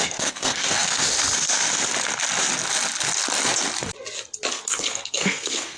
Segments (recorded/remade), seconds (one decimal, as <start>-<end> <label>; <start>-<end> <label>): 0.0-1.0 remade; 1.0-4.5 recorded; 4.5-5.8 remade